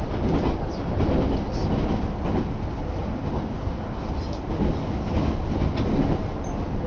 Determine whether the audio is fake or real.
real